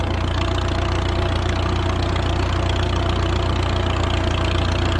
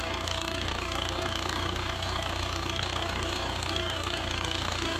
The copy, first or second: second